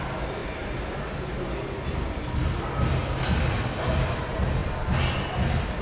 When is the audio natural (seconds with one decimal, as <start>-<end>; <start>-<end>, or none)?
0.0-5.8